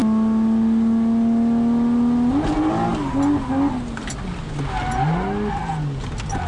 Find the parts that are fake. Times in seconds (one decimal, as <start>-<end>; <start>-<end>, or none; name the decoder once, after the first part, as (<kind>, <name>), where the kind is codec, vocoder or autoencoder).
none